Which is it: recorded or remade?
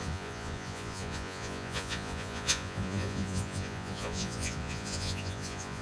remade